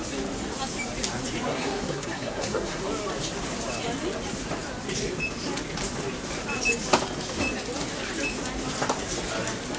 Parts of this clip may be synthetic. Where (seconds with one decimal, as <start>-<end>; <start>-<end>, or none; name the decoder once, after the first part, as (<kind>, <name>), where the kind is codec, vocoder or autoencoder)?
1.5-2.8 (codec, SNAC)